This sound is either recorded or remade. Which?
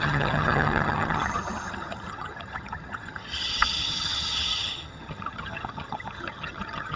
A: remade